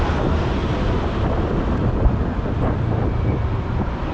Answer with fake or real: real